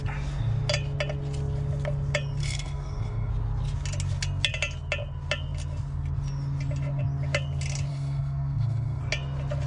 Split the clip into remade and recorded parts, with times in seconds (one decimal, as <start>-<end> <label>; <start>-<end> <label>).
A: 0.0-2.4 recorded; 2.4-3.3 remade; 3.3-7.9 recorded; 7.9-9.0 remade; 9.0-9.7 recorded